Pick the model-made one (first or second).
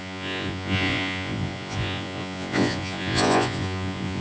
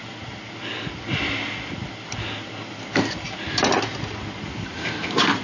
first